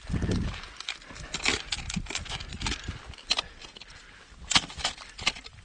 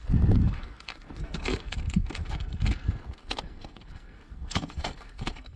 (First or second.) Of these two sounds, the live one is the first